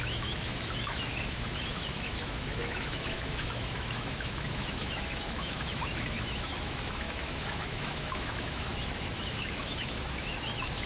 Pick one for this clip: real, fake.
fake